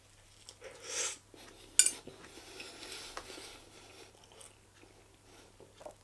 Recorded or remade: recorded